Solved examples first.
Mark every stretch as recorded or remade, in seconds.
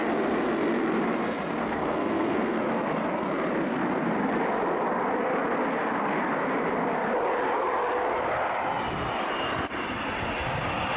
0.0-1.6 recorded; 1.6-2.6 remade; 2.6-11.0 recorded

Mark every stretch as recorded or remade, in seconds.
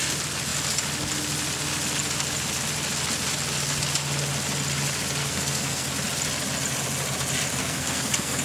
0.0-5.2 recorded; 5.2-5.9 remade; 5.9-7.6 recorded; 7.6-8.4 remade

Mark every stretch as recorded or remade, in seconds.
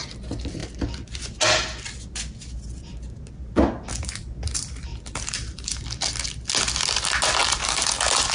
0.0-4.9 recorded; 4.9-5.8 remade; 5.8-7.4 recorded; 7.4-7.9 remade; 7.9-8.3 recorded